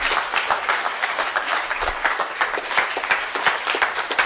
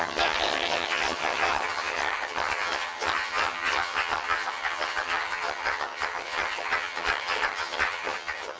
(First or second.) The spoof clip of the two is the second